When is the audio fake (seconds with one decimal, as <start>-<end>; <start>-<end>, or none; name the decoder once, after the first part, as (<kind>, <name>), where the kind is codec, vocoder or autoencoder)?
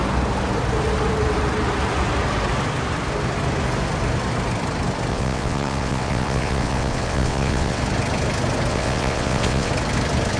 5.1-7.8 (vocoder, WaveNeXt); 8.7-9.7